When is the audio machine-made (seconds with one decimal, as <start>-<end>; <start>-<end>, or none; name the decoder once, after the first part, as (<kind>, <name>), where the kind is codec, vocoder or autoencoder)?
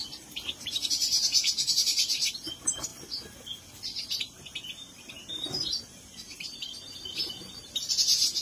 0.0-2.9 (vocoder, BigVGAN v2); 4.0-8.4